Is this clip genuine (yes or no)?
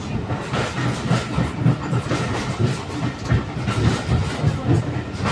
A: yes